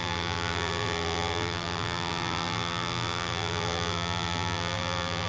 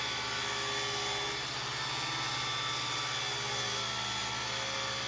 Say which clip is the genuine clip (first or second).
second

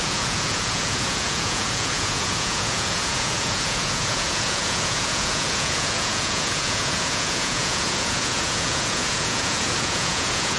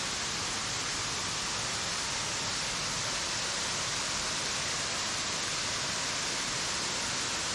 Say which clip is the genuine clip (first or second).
second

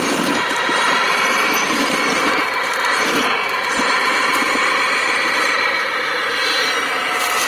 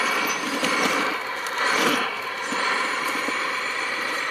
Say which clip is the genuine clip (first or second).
second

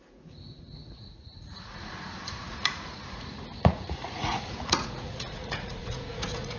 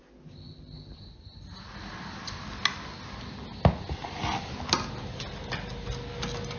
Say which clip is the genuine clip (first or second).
second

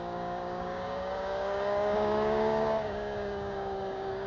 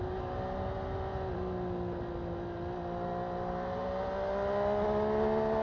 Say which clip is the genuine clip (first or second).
second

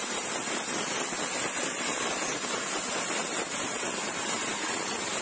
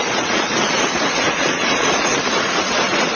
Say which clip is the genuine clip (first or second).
first